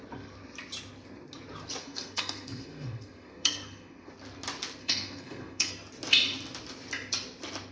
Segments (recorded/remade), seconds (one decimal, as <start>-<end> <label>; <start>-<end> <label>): 0.0-1.8 recorded; 1.8-4.1 remade; 4.1-4.8 recorded; 4.8-5.7 remade; 5.7-7.7 recorded